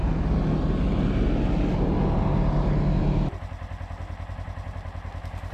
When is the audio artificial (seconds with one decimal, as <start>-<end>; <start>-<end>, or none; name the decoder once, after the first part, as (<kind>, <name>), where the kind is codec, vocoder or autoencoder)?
none